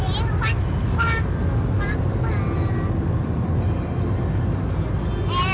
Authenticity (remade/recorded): recorded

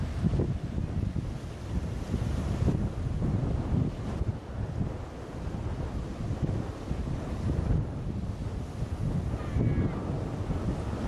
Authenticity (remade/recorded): recorded